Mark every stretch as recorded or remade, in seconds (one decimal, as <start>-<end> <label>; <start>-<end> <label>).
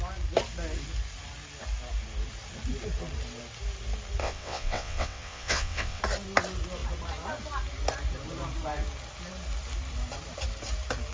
0.0-4.2 recorded; 4.2-6.0 remade; 6.0-11.1 recorded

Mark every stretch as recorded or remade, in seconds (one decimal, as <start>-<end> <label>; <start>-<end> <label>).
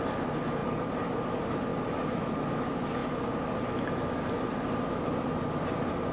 0.0-6.1 recorded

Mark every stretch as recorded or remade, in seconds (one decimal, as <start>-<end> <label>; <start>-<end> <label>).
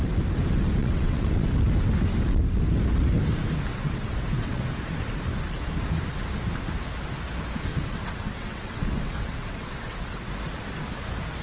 0.0-0.8 recorded; 0.8-1.5 remade; 1.5-3.7 recorded; 3.7-4.6 remade; 4.6-7.7 recorded; 7.7-10.3 remade; 10.3-11.4 recorded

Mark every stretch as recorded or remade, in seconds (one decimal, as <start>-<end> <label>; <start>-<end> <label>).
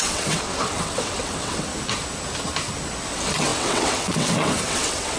0.0-1.7 remade; 1.7-3.1 recorded; 3.1-5.2 remade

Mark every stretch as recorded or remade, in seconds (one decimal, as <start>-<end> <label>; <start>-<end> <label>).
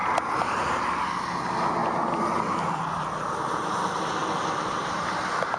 0.0-5.6 recorded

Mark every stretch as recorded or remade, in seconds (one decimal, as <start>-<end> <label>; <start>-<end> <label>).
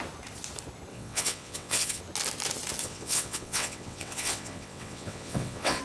0.0-0.9 recorded; 0.9-2.0 remade; 2.0-2.8 recorded; 2.8-5.8 remade